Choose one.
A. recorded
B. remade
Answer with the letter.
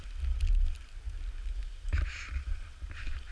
A